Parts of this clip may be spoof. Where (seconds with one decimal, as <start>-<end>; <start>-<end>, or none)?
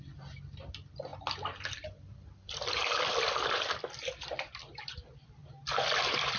0.0-5.4; 6.0-6.4